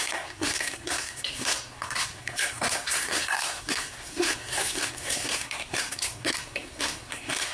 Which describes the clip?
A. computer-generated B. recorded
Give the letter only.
A